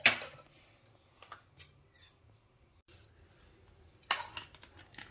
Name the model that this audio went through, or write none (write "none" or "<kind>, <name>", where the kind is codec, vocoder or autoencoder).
none